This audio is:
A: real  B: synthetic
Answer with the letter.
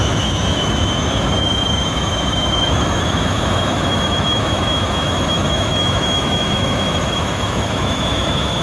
B